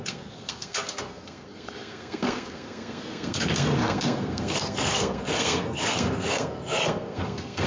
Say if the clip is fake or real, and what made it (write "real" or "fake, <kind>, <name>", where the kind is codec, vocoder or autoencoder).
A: fake, codec, SNAC